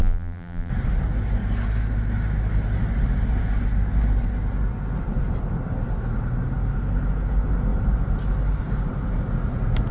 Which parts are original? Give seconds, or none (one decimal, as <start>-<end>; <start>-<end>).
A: 0.7-9.9